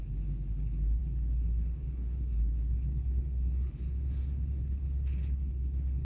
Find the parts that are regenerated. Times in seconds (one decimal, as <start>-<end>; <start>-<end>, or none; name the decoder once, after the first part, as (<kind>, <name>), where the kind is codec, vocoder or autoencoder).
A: 0.0-6.0 (codec, HILCodec)